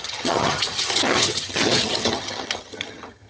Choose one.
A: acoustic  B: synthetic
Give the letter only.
B